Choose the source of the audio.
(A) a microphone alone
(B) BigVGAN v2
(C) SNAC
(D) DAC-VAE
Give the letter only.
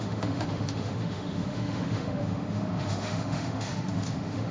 D